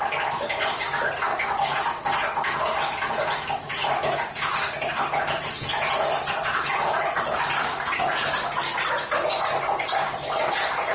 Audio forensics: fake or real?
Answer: real